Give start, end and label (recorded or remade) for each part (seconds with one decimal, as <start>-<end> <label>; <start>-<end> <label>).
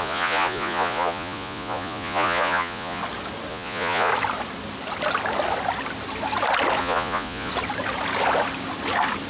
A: 0.0-3.0 remade; 3.0-3.5 recorded; 3.5-4.1 remade; 4.1-6.8 recorded; 6.8-7.5 remade; 7.5-9.3 recorded